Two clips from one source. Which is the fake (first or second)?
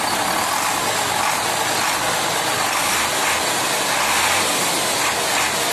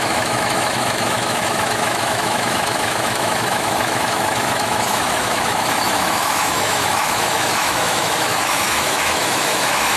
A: second